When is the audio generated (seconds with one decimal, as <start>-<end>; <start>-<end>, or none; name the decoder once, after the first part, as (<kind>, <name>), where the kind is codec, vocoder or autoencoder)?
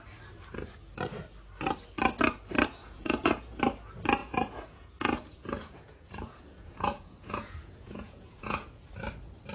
2.8-3.6 (vocoder, Vocos); 4.2-8.9